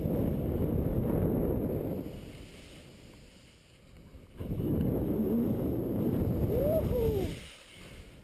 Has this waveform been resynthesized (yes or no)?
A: yes